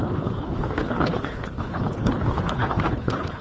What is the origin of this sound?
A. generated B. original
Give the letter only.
A